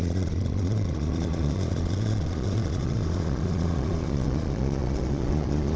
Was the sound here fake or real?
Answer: fake